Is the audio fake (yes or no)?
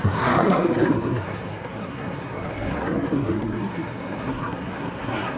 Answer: yes